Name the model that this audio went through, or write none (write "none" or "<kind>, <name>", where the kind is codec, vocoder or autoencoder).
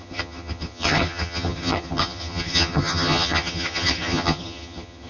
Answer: vocoder, HiFi-GAN